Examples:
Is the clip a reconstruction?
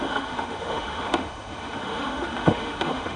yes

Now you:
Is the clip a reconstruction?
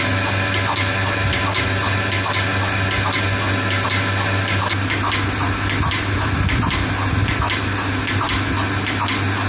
no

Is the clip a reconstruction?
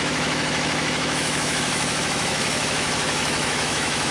yes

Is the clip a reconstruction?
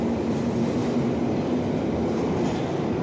no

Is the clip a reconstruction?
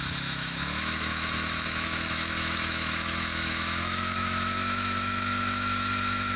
yes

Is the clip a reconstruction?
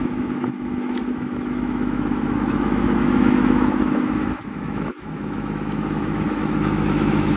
yes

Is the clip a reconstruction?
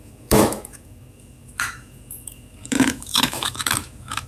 yes